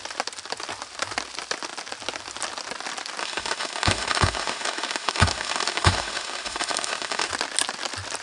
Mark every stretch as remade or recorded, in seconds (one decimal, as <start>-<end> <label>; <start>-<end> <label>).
0.0-3.2 recorded; 3.2-7.3 remade; 7.3-8.2 recorded